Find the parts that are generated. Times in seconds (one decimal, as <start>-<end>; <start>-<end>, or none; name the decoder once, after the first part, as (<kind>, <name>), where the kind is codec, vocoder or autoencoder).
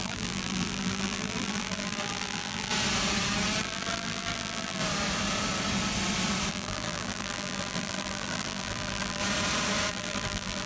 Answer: 0.0-2.7 (vocoder, BigVGAN v2); 3.6-4.8; 6.5-9.2; 9.9-10.7